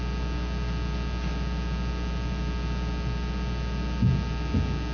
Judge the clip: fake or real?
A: real